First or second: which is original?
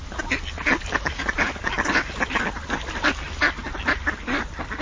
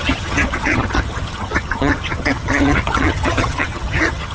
first